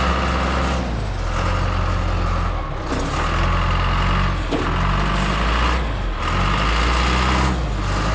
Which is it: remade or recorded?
recorded